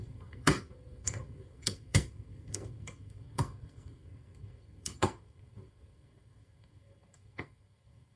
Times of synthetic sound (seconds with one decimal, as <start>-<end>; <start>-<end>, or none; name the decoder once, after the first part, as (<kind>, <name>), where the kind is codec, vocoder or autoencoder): 0.0-8.2 (codec, SNAC)